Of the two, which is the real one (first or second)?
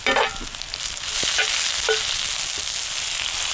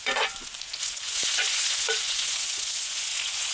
first